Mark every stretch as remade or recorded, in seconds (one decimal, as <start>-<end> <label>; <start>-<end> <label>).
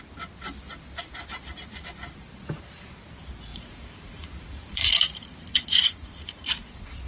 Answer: 0.0-3.5 recorded; 3.5-4.9 remade; 4.9-5.5 recorded; 5.5-7.1 remade